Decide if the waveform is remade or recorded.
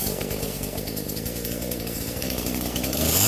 remade